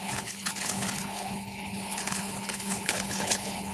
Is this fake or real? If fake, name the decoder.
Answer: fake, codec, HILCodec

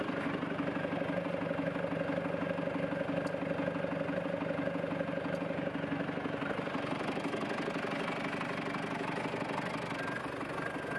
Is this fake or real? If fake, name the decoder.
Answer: real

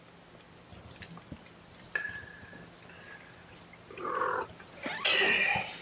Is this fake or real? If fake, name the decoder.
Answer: real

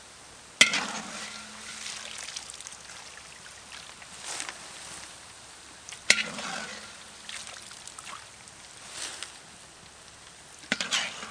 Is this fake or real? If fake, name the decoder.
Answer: real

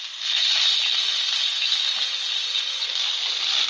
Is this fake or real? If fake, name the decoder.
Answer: real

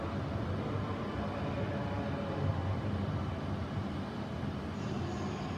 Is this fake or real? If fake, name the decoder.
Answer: real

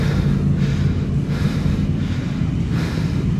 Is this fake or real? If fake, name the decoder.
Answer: real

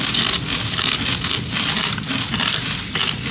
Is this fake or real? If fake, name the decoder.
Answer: real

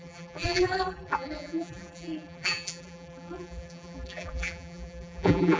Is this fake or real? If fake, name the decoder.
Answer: fake, vocoder, BigVGAN v2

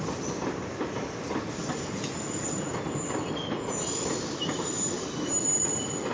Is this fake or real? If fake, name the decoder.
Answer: real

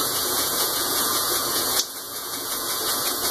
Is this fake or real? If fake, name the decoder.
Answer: fake, vocoder, Vocos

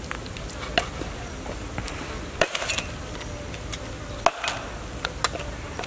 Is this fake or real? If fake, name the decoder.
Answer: real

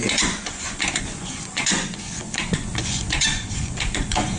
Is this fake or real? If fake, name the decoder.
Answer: fake, vocoder, Vocos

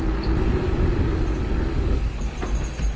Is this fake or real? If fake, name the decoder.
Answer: real